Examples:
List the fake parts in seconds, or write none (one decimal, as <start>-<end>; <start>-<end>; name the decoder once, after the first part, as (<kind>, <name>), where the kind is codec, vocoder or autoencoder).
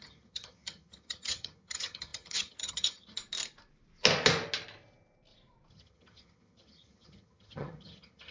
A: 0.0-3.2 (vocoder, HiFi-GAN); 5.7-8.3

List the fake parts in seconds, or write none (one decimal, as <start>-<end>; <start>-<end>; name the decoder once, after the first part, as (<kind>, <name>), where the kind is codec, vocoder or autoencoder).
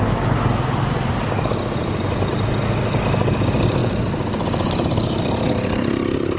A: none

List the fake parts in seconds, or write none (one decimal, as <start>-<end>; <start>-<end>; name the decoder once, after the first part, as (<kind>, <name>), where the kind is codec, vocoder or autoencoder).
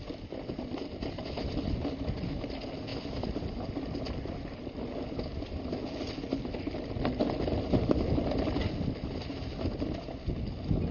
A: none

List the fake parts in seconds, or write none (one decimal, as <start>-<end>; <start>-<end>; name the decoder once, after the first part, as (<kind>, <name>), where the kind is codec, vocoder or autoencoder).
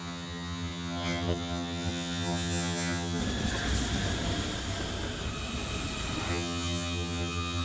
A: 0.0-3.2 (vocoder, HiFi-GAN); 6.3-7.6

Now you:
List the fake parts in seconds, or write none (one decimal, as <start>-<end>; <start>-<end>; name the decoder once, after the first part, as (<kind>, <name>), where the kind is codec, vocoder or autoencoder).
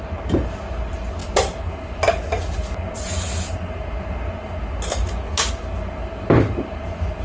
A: none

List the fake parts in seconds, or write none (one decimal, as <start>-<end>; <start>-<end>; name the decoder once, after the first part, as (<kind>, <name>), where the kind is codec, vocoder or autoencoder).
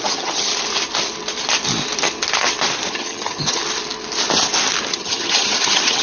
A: 0.0-0.5 (vocoder, HiFi-GAN); 2.9-3.6; 4.9-6.0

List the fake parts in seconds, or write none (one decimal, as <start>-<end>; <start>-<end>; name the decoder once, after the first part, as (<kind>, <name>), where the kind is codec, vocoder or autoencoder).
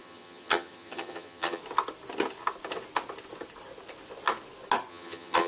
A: 0.0-1.6 (vocoder, HiFi-GAN); 4.9-5.5